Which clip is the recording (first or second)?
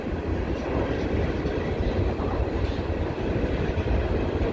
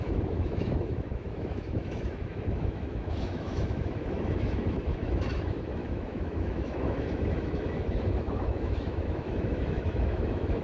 first